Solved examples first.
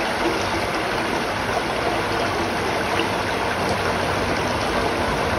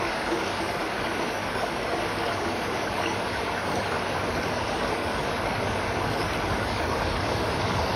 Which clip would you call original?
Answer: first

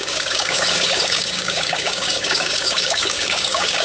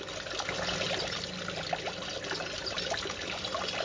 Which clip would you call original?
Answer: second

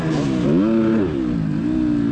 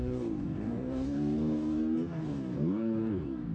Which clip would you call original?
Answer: first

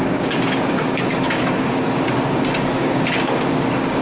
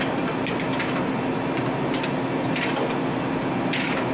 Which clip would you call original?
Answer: second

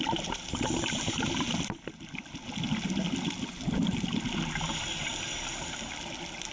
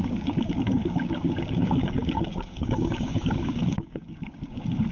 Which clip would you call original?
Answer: first